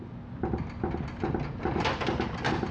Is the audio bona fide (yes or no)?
yes